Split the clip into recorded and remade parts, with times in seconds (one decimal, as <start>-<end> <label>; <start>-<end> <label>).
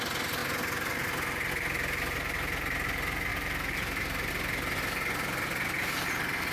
0.0-3.3 recorded; 3.3-4.3 remade; 4.3-6.5 recorded